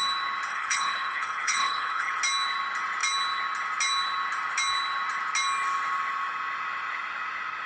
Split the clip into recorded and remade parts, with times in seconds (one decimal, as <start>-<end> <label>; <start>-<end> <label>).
0.0-0.5 recorded; 0.5-2.2 remade; 2.2-7.7 recorded